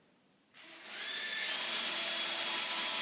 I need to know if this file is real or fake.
real